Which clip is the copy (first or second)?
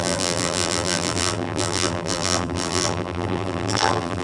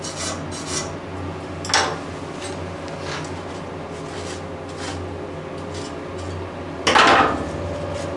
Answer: first